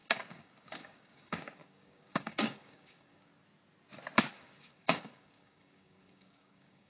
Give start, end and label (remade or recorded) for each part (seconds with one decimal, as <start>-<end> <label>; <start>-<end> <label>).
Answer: 0.0-3.3 remade; 3.3-4.3 recorded; 4.3-6.9 remade